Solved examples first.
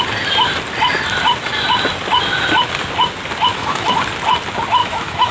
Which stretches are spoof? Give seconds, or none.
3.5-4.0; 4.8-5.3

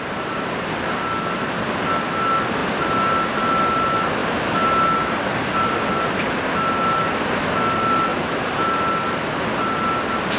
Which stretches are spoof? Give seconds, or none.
none

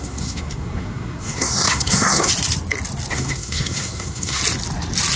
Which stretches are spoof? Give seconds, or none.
0.0-2.3; 3.1-4.4

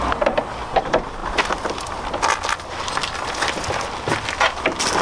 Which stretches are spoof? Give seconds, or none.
none

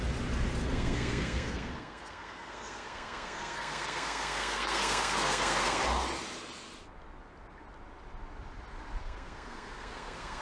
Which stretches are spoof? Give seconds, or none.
0.6-5.8; 9.0-10.4

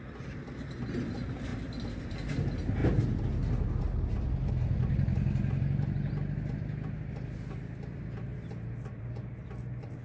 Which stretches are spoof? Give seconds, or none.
none